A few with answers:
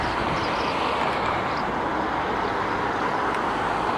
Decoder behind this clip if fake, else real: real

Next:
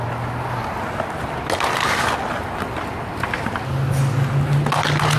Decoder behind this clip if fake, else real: real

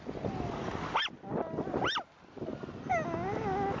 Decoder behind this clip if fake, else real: real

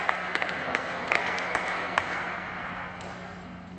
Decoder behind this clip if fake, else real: fake, codec, SNAC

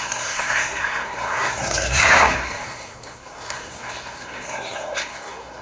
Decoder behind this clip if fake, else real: fake, codec, SNAC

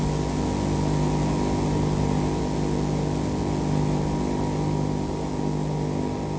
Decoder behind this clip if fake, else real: real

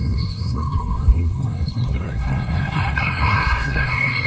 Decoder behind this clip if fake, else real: fake, codec, SNAC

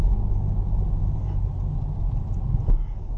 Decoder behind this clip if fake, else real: real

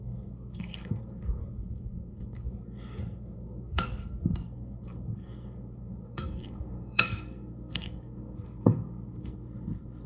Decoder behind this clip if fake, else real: fake, codec, SNAC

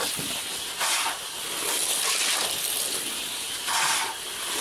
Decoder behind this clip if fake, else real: real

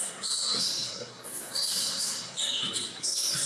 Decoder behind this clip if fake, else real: fake, codec, SNAC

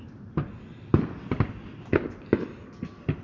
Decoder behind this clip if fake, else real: real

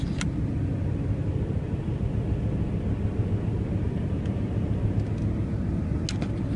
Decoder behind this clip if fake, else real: real